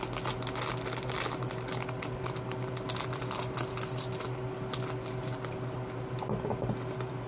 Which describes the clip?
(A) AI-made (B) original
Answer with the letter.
B